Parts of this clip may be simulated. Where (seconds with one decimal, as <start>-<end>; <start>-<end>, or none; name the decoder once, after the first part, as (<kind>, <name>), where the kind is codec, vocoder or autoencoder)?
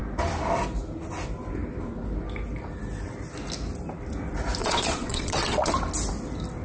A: 4.6-5.7 (vocoder, Vocos)